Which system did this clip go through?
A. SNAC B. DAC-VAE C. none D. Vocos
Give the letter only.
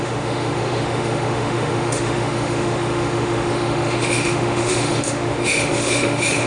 B